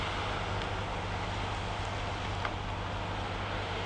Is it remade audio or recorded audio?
recorded